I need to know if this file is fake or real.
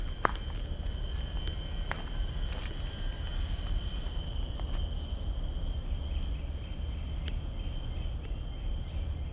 real